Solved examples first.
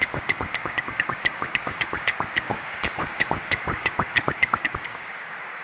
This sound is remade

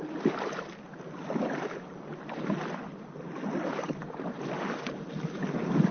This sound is recorded